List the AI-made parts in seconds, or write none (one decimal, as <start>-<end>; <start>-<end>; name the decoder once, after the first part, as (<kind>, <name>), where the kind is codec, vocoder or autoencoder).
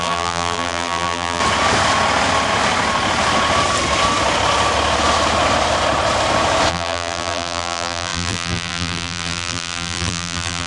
0.0-1.4 (vocoder, BigVGAN v2); 6.7-10.7